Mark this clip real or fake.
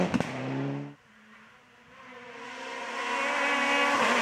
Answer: real